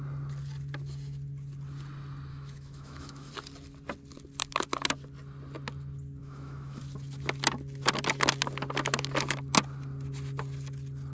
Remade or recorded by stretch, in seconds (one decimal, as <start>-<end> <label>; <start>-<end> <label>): 0.0-2.3 recorded; 2.3-3.3 remade; 3.3-6.2 recorded; 6.2-6.8 remade; 6.8-11.1 recorded